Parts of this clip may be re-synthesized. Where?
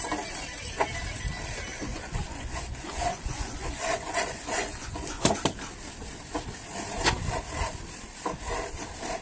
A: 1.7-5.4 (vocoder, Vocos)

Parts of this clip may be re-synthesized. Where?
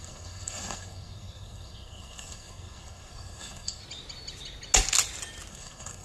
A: 0.0-3.8 (codec, SNAC); 5.5-6.0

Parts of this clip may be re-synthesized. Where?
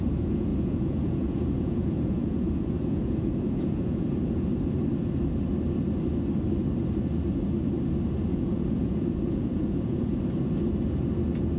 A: 0.0-4.5 (vocoder, Vocos); 8.3-10.1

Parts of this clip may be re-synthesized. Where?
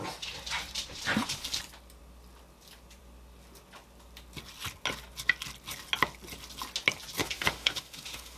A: 7.2-8.4 (autoencoder, DAC-VAE)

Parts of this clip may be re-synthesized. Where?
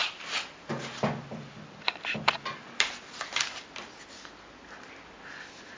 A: 0.0-1.0 (vocoder, BigVGAN v2)